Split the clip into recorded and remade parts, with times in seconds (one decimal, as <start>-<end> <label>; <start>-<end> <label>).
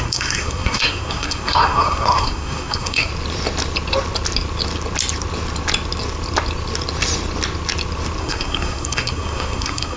0.0-3.1 remade; 3.1-8.2 recorded; 8.2-10.0 remade